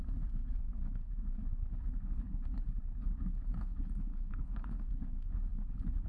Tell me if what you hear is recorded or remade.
remade